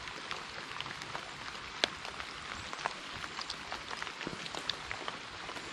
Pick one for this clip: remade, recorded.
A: recorded